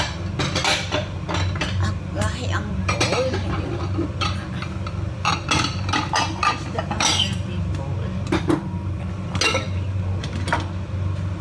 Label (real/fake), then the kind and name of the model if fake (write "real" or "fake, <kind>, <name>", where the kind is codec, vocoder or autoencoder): real